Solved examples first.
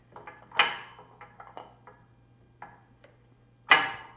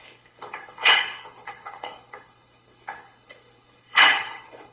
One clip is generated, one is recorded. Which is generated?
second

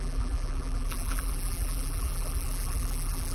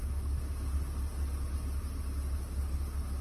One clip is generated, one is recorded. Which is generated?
first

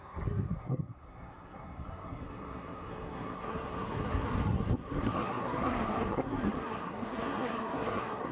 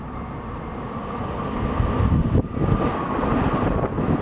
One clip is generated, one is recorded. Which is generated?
first